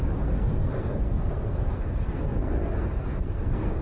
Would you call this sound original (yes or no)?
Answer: no